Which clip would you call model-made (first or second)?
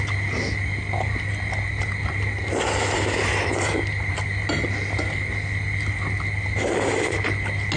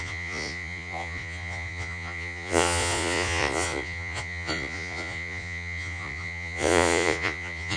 second